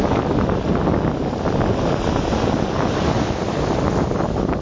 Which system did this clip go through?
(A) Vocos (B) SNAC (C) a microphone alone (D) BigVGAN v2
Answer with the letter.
C